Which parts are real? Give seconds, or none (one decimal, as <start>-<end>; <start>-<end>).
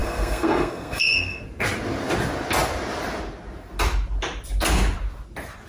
1.4-5.7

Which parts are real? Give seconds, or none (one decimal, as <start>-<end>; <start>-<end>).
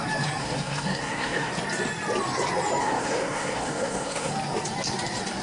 0.0-0.4; 1.5-2.8; 4.3-5.4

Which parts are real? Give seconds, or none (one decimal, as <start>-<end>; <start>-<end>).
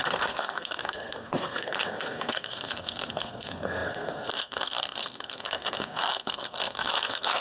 none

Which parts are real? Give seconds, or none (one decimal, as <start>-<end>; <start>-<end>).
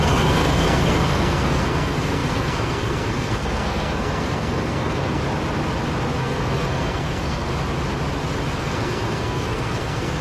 5.2-6.2; 7.5-8.6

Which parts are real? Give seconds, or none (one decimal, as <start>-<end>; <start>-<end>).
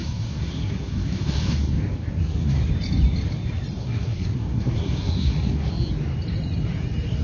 1.7-2.2; 2.7-3.8; 5.7-7.2